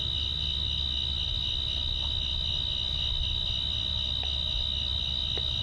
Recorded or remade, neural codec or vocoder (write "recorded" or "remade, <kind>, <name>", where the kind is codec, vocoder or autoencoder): recorded